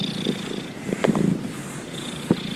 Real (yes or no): yes